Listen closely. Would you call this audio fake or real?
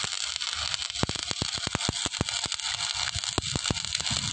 real